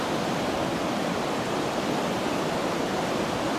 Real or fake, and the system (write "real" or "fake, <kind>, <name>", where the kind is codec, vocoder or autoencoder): real